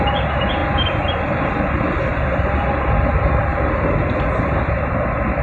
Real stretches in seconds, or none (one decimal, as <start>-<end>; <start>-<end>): 0.0-0.6; 1.5-5.4